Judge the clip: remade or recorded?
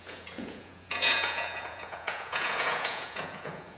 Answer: remade